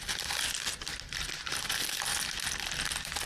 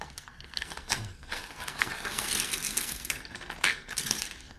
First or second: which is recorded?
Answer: first